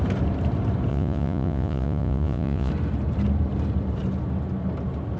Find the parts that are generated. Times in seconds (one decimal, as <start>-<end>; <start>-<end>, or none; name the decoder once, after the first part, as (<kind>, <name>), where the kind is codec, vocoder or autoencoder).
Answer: 0.9-2.7 (vocoder, Vocos)